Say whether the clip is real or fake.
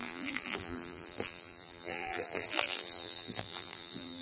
fake